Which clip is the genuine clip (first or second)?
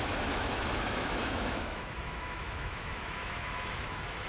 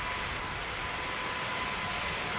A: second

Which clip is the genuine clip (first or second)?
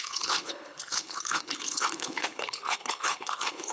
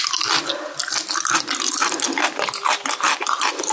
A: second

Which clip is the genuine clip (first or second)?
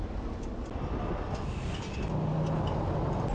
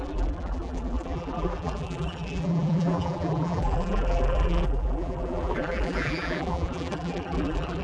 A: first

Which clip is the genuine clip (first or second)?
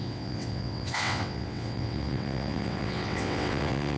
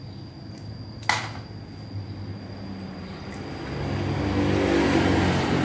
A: second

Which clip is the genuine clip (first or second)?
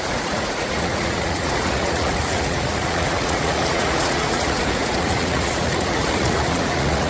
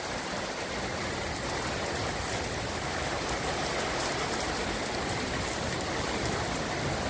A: second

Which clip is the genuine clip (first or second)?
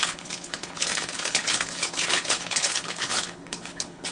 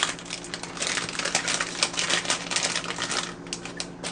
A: second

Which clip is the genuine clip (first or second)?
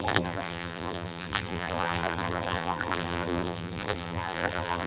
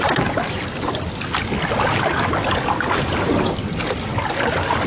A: second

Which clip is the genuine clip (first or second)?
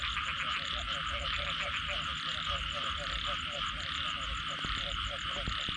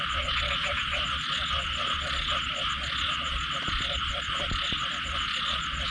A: first